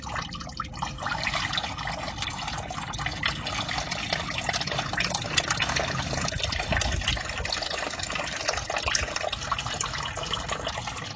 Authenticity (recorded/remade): recorded